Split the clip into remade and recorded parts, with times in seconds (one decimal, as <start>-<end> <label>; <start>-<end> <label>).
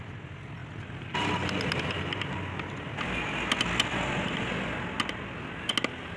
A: 0.0-6.2 recorded